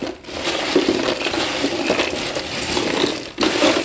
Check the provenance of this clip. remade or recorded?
recorded